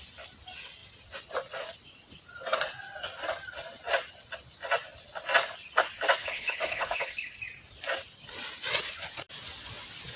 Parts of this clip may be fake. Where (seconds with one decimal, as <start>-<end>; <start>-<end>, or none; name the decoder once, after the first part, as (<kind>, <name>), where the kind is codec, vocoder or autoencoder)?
6.2-7.4 (codec, HILCodec)